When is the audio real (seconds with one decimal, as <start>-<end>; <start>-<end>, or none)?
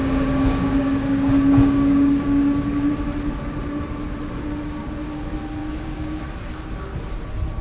2.9-5.6; 6.2-7.6